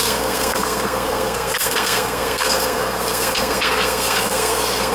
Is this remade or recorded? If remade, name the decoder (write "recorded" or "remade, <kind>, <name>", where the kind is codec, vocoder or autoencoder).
remade, codec, SNAC